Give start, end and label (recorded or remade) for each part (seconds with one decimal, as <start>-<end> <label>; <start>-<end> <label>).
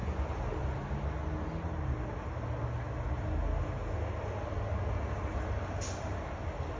0.0-6.8 recorded